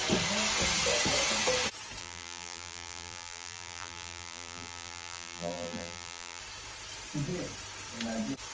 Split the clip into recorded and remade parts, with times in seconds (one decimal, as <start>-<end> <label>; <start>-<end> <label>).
0.0-2.0 recorded; 2.0-6.4 remade; 6.4-8.5 recorded